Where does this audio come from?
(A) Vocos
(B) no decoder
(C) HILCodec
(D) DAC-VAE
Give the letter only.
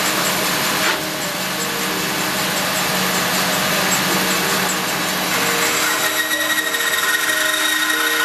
B